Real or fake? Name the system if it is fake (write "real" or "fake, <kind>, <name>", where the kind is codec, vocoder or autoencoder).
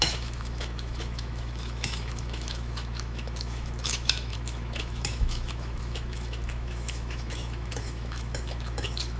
fake, autoencoder, DAC-VAE